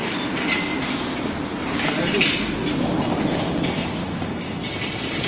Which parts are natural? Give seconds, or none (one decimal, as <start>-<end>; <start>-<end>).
0.0-4.0; 4.6-5.3

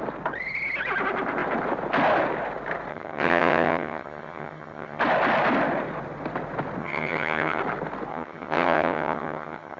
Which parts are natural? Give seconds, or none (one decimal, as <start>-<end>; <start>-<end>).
0.0-2.9; 5.0-6.8; 7.6-8.1